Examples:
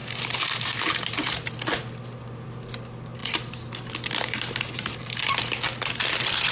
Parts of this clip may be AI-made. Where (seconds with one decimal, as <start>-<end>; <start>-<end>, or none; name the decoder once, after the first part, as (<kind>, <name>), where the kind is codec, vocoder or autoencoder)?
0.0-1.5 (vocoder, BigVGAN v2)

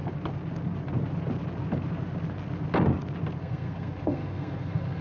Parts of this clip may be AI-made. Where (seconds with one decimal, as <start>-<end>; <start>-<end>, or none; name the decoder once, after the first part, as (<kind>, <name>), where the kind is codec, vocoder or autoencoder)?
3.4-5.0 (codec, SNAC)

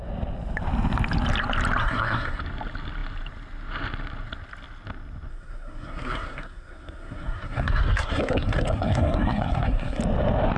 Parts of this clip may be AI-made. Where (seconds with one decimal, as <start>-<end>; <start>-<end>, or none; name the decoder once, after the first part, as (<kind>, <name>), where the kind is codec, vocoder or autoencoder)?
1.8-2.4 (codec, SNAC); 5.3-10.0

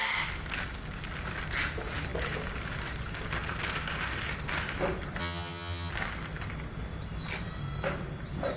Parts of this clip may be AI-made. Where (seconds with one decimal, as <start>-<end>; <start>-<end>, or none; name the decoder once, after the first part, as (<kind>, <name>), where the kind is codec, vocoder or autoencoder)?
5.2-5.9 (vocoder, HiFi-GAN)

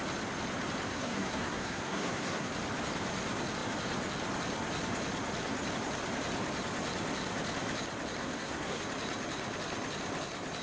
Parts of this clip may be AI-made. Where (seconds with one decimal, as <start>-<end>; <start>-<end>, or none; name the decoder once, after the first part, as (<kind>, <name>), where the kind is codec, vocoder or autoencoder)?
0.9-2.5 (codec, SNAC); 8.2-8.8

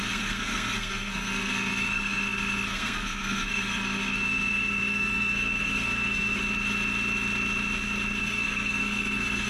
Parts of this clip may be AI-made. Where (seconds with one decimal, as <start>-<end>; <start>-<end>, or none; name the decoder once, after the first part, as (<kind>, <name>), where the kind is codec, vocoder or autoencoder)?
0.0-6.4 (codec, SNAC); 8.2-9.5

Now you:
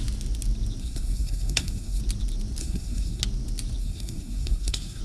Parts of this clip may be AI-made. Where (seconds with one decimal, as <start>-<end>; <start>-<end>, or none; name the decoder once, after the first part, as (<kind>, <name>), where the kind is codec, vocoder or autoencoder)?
0.8-2.0 (codec, SNAC); 2.6-3.2; 3.8-5.0

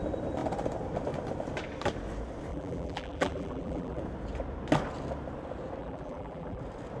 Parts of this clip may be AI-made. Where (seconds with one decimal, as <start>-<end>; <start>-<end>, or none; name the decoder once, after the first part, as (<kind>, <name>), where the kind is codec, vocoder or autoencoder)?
2.5-4.0 (vocoder, BigVGAN v2); 5.8-6.6